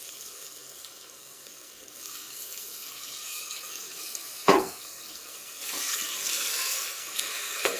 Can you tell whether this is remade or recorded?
remade